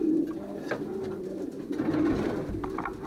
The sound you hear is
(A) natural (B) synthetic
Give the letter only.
A